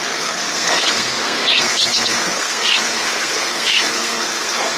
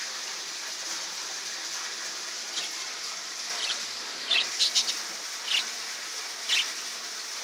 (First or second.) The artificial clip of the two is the first